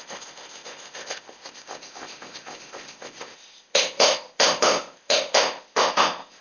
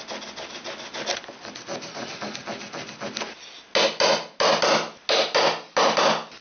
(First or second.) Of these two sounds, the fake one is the first